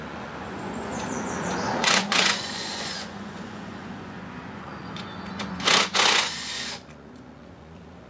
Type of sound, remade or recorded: remade